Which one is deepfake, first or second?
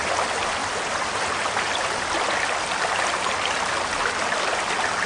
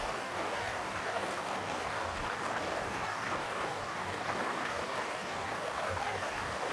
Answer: second